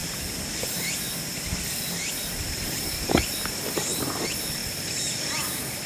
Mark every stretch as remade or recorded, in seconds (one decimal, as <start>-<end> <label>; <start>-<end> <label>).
0.0-5.9 remade